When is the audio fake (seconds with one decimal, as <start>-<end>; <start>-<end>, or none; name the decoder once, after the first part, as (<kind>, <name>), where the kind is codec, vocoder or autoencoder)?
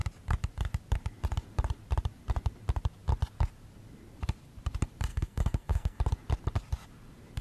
5.1-6.0 (codec, SNAC)